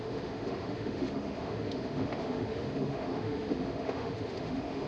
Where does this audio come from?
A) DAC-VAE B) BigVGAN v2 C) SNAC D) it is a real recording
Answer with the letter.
A